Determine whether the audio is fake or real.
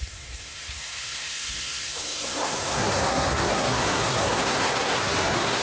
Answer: fake